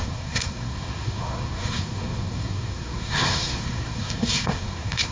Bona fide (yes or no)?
no